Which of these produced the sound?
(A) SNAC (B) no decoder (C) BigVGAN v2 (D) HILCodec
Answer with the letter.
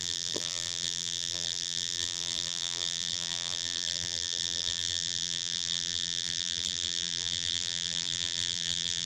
C